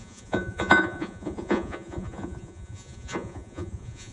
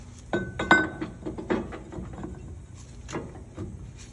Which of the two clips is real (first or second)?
second